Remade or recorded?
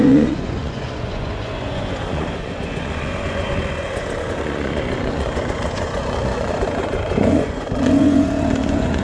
remade